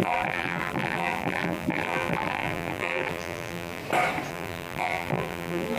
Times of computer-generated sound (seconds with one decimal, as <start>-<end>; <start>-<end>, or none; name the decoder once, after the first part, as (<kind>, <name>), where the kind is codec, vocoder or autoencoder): 0.0-3.8 (vocoder, BigVGAN v2); 4.3-5.8